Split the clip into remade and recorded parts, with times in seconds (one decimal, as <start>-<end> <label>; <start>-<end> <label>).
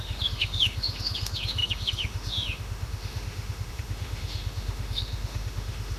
0.0-6.0 remade